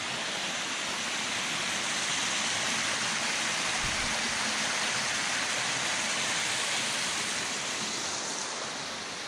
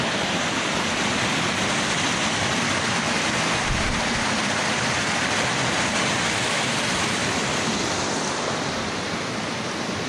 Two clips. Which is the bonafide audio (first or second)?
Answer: first